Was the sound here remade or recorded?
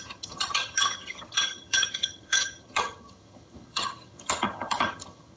remade